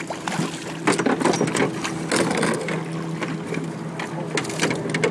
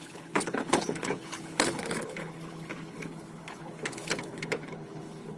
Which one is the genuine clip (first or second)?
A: first